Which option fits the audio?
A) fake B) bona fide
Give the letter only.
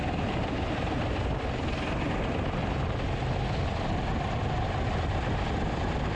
B